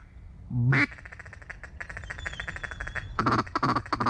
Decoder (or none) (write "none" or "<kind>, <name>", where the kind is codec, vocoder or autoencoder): none